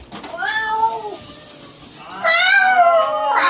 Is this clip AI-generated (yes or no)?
no